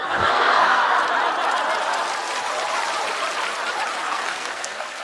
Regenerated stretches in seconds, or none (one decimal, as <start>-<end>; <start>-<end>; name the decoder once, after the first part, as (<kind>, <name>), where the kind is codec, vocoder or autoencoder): 0.0-1.0 (codec, SNAC); 4.0-5.0